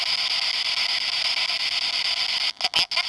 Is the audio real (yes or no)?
yes